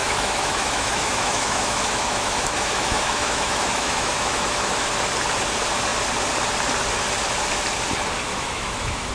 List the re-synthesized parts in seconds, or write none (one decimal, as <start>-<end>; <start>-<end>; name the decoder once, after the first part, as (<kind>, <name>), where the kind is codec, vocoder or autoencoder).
0.0-4.9 (autoencoder, DAC-VAE); 8.3-9.1